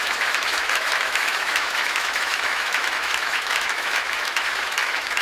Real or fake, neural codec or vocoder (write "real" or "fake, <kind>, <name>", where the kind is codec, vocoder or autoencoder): fake, autoencoder, DAC-VAE